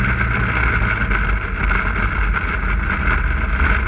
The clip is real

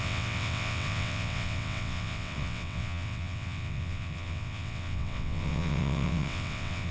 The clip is fake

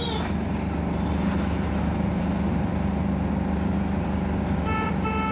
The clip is real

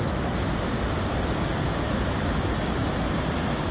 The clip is real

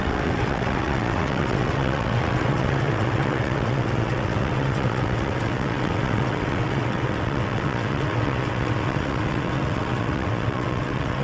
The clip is fake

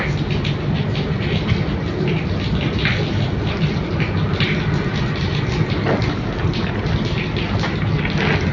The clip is real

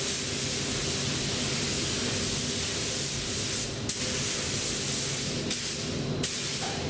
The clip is real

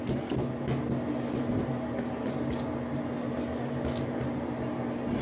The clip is real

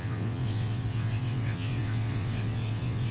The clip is fake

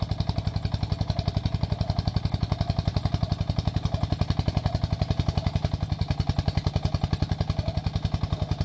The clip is real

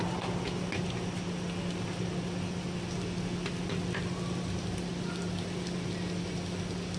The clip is real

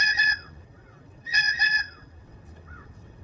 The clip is fake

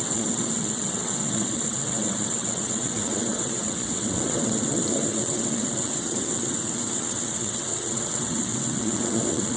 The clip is fake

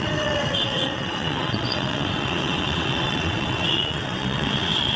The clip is fake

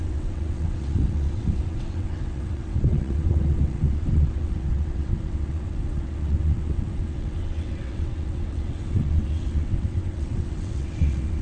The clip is fake